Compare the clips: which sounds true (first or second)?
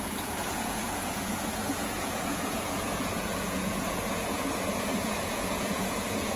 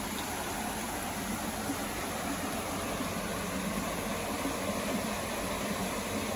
second